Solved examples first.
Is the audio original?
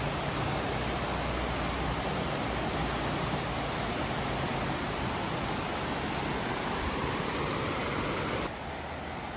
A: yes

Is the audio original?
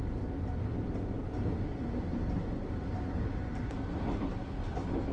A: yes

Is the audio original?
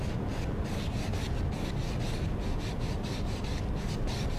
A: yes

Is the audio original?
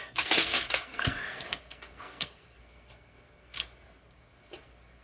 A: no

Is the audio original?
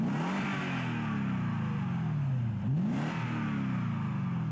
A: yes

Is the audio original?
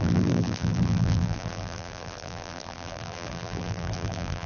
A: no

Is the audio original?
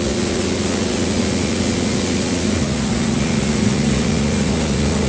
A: no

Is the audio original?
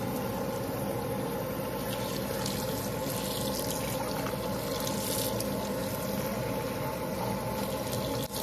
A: yes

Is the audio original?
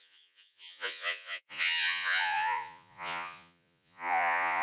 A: no